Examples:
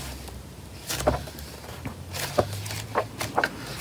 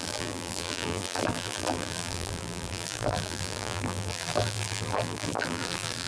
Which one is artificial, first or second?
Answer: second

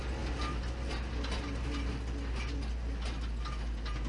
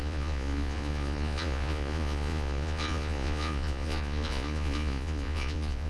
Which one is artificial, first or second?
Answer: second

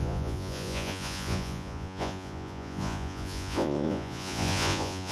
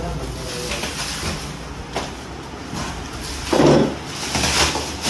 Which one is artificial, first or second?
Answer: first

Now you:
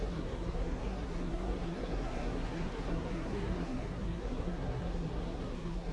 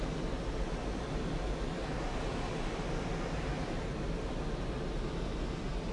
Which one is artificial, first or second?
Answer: first